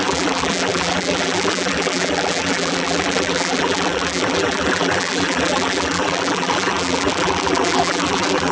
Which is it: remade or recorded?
remade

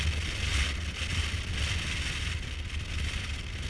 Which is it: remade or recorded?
recorded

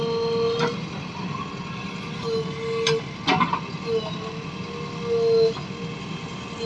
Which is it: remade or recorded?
recorded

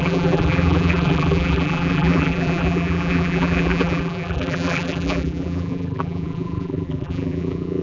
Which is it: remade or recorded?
remade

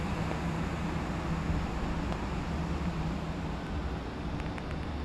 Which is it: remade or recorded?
recorded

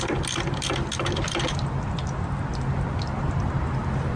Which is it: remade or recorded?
recorded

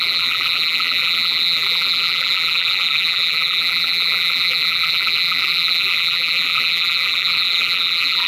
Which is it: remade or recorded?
remade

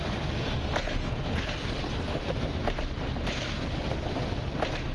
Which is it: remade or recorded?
recorded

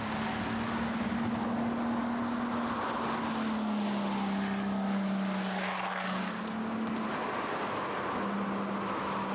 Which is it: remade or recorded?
recorded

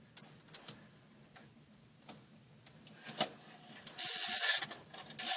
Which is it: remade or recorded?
recorded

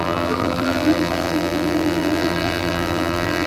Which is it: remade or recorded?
remade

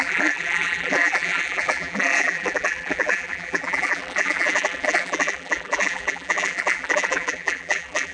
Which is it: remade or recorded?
remade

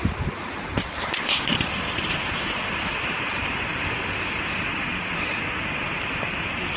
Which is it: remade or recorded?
remade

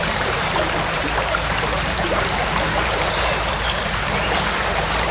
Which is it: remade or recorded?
remade